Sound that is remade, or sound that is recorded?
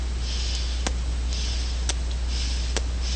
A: recorded